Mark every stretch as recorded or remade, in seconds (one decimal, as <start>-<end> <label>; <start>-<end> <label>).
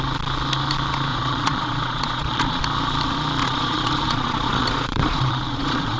0.0-1.1 recorded; 1.1-2.6 remade; 2.6-3.4 recorded; 3.4-6.0 remade